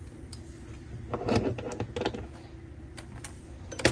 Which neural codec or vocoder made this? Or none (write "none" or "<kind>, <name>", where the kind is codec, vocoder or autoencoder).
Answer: none